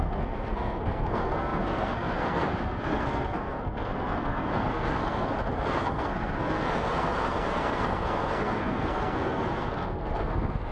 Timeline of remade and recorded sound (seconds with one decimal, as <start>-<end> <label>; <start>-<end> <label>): 0.0-10.7 remade